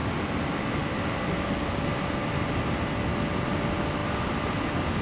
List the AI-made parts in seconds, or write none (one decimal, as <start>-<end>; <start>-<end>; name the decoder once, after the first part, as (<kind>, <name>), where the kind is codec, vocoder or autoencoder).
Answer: none